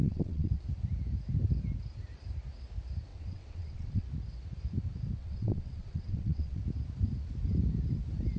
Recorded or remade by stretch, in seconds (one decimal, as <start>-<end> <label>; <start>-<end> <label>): 0.0-0.6 remade; 0.6-3.1 recorded; 3.1-4.0 remade; 4.0-5.2 recorded; 5.2-6.6 remade; 6.6-8.4 recorded